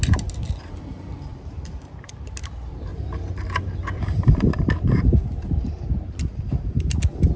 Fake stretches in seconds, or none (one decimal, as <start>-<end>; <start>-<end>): 1.3-2.1; 2.9-7.0

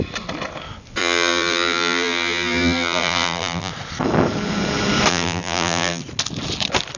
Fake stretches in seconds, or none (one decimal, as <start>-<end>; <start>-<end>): 1.0-3.7; 5.1-6.0

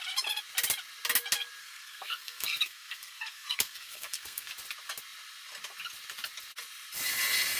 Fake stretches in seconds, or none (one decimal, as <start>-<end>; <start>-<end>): 1.6-4.5

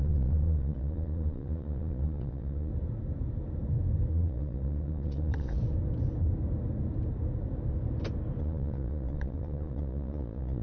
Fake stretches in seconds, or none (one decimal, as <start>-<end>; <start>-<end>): 0.0-2.7; 4.1-5.6; 8.4-10.6